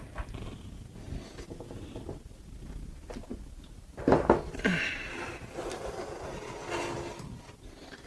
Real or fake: real